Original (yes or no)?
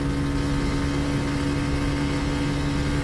yes